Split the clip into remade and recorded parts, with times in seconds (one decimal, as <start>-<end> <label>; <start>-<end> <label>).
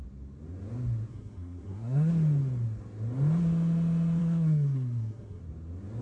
0.0-1.1 recorded; 1.1-2.1 remade; 2.1-4.2 recorded; 4.2-5.4 remade; 5.4-6.0 recorded